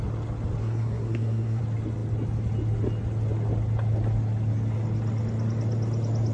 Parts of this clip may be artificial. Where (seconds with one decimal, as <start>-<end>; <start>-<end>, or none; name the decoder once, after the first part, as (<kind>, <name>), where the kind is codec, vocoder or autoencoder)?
0.6-1.6 (codec, SNAC)